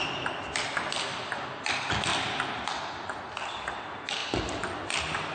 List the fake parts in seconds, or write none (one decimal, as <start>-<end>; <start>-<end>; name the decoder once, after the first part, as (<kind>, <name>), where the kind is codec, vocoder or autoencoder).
none